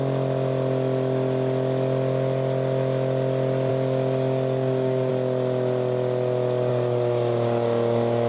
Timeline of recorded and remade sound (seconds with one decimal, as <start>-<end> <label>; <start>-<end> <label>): 0.0-3.7 recorded; 3.7-5.1 remade; 5.1-6.7 recorded; 6.7-8.3 remade